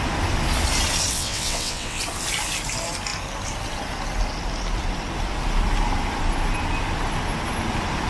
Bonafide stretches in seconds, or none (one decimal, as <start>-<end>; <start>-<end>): 0.0-1.1; 2.0-8.1